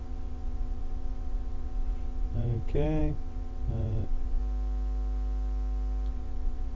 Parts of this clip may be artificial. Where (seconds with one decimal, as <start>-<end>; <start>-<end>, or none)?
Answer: 0.0-4.4; 6.1-6.8